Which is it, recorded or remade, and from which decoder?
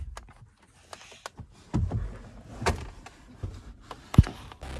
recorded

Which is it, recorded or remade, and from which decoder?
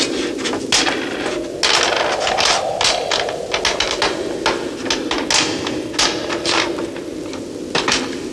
recorded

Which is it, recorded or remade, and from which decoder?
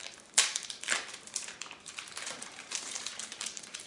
remade, vocoder, BigVGAN v2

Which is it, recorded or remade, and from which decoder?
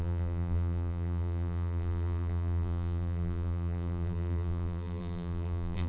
remade, vocoder, BigVGAN v2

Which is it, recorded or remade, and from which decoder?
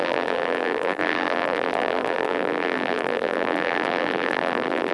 remade, vocoder, BigVGAN v2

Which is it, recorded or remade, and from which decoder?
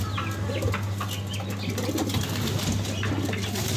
recorded